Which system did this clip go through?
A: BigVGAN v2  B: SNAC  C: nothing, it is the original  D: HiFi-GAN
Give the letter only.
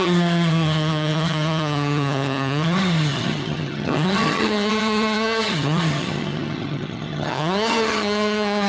D